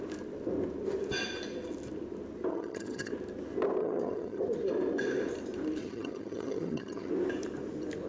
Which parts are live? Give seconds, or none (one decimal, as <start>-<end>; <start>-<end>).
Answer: 0.0-2.5; 3.1-3.8; 4.4-5.8; 7.1-8.1

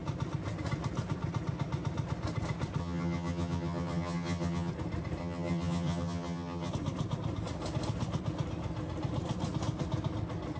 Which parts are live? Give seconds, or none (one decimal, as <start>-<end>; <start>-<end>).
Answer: 0.0-2.8; 4.7-5.2; 6.7-10.6

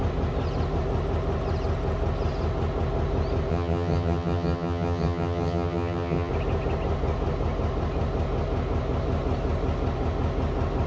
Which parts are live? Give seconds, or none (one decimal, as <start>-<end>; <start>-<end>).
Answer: 0.0-3.5; 6.3-10.9

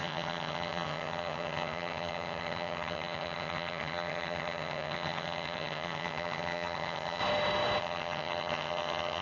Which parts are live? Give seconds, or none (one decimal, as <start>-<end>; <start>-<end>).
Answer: 7.2-7.8

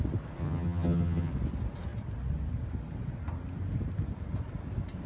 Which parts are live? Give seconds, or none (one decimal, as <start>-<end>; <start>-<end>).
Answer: 0.0-0.4; 1.3-5.1

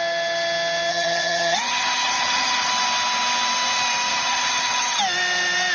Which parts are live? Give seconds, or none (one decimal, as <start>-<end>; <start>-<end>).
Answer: 0.0-0.9; 2.7-4.1; 5.0-5.7

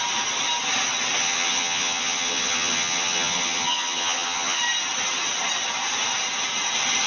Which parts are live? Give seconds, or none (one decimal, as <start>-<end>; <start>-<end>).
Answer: 0.0-1.2; 4.6-7.1